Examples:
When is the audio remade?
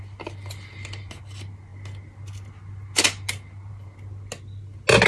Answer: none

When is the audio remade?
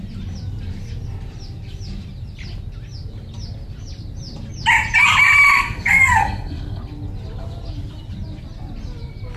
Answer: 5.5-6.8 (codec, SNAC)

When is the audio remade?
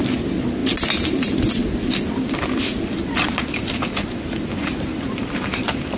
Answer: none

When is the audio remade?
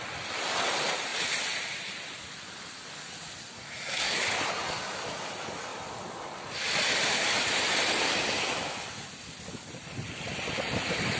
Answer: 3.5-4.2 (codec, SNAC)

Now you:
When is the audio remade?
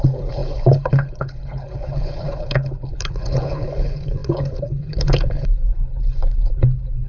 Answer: 0.0-7.1 (codec, HILCodec)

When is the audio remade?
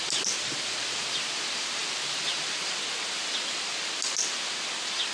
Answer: none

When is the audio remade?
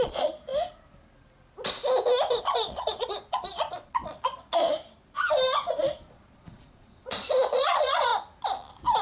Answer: 0.0-0.5 (vocoder, Vocos); 2.4-4.6; 6.1-8.1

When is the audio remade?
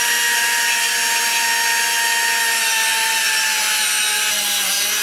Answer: none